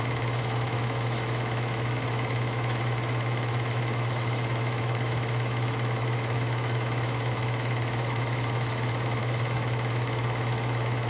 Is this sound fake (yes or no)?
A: yes